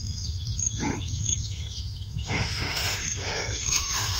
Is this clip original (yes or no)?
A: no